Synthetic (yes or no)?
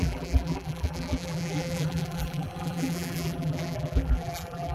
yes